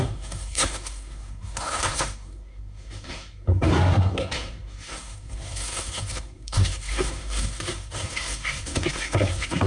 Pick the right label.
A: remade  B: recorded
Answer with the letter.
A